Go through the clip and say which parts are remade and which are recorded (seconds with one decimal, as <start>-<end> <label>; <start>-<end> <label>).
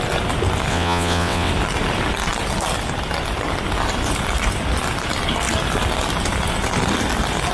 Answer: 0.0-0.7 recorded; 0.7-1.5 remade; 1.5-7.5 recorded